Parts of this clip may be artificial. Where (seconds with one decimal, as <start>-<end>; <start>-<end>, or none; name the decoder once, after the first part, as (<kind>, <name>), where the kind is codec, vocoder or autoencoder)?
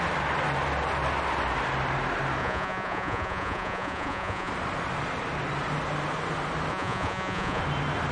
2.4-4.5 (vocoder, Vocos); 6.7-7.6